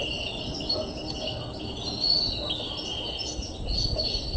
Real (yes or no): yes